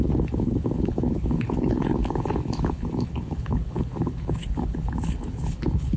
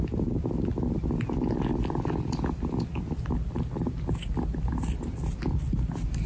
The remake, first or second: first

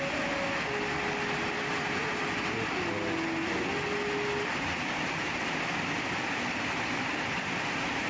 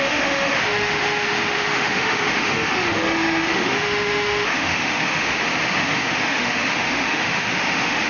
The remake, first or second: second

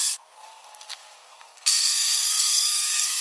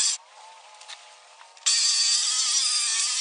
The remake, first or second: first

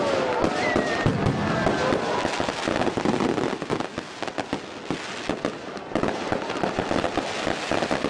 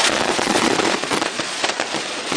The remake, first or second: second